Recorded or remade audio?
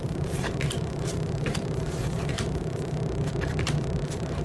remade